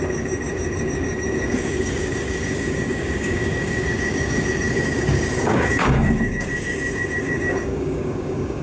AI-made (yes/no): yes